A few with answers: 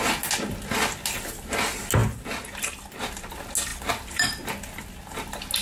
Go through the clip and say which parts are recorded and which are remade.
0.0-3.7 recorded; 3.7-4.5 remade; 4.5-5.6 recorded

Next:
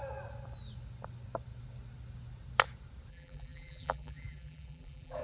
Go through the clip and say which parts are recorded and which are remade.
0.0-3.1 recorded; 3.1-5.2 remade

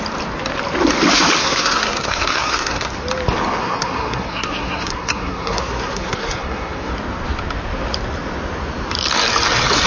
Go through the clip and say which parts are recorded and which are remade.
0.0-1.4 recorded; 1.4-2.9 remade; 2.9-3.6 recorded; 3.6-6.9 remade; 6.9-9.9 recorded

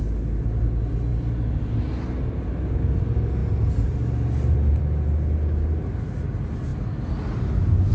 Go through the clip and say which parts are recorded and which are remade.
0.0-7.9 recorded

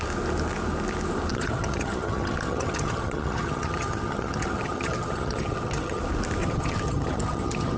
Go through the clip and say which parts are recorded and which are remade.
0.0-1.3 recorded; 1.3-6.0 remade; 6.0-6.4 recorded; 6.4-7.8 remade

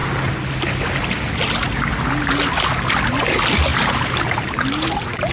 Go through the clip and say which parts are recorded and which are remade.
0.0-3.7 recorded; 3.7-5.3 remade

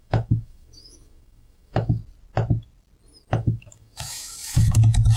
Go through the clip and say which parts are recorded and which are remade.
0.0-2.0 remade; 2.0-3.3 recorded; 3.3-5.2 remade

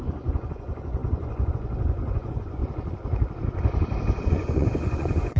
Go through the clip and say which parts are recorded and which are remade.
0.0-2.6 remade; 2.6-4.2 recorded; 4.2-5.4 remade